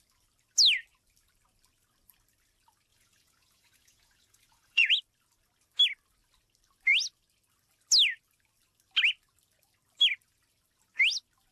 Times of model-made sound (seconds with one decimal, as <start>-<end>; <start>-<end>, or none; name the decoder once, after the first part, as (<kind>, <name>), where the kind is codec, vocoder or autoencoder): 2.9-4.9 (vocoder, Vocos)